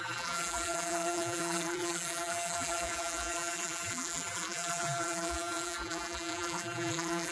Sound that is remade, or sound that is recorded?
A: remade